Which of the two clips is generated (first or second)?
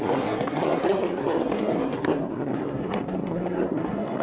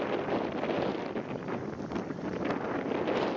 first